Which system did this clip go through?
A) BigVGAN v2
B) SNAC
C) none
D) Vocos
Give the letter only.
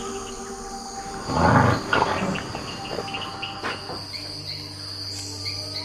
C